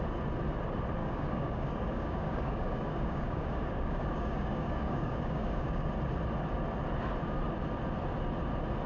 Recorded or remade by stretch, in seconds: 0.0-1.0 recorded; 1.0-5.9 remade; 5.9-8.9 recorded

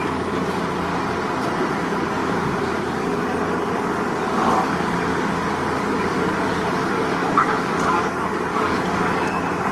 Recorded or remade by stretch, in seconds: 0.0-0.9 remade; 0.9-1.7 recorded; 1.7-9.7 remade